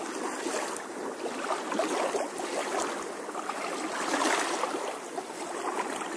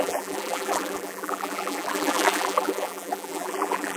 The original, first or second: first